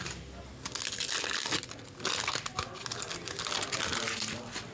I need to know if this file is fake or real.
real